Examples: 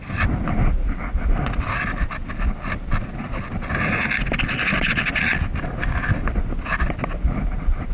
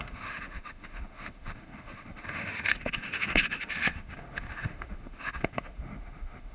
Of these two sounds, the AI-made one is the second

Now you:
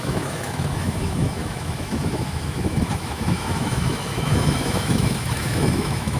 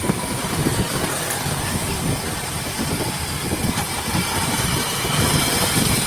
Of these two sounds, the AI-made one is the first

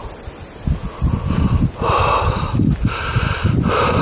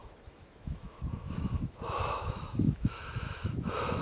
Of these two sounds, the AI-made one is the second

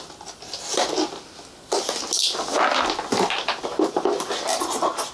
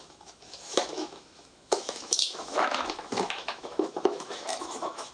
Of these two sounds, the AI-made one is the second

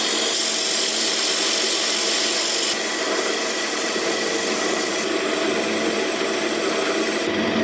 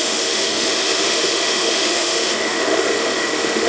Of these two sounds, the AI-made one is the second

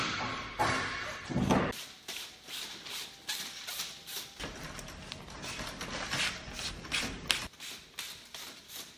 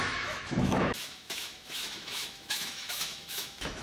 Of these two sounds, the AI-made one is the second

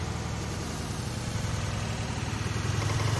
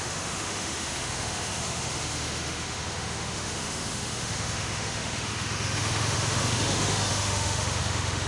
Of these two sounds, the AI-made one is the second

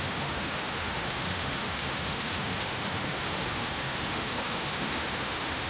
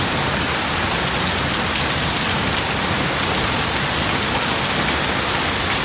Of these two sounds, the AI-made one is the first